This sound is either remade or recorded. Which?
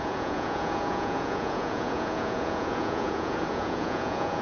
remade